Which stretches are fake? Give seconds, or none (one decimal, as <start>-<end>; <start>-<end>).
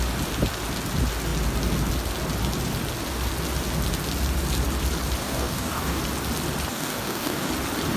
5.2-6.0; 6.7-7.5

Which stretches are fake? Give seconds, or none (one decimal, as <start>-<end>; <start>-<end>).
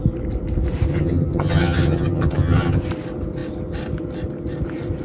0.9-2.8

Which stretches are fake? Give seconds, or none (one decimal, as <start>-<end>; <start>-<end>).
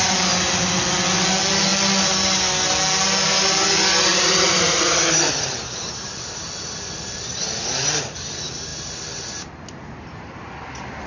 none